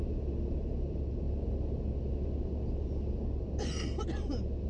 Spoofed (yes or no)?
no